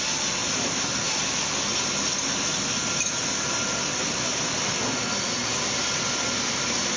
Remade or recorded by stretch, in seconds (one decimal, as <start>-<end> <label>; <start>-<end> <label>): 0.0-7.0 recorded